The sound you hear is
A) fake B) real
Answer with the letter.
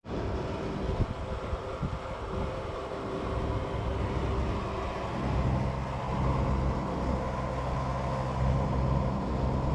B